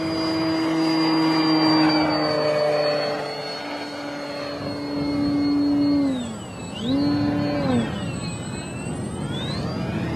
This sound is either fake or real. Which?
real